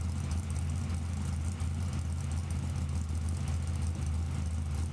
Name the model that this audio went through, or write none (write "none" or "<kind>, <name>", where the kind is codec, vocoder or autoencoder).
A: none